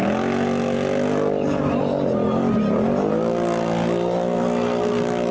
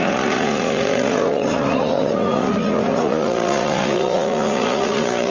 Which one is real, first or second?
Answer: first